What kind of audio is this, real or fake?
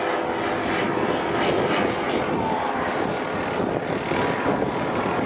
real